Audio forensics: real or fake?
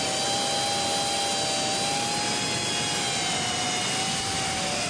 real